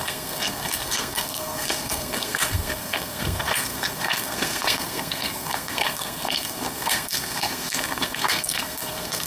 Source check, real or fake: fake